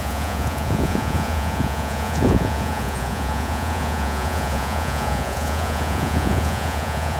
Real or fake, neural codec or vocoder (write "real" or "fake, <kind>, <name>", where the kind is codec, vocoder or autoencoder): fake, vocoder, Vocos